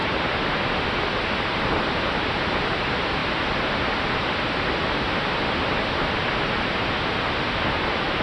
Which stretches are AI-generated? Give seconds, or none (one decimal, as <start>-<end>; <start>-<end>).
none